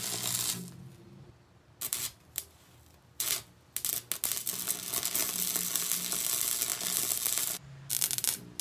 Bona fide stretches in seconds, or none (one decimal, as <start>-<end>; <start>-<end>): 0.0-1.9; 3.3-8.6